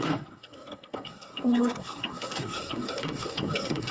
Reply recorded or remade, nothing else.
remade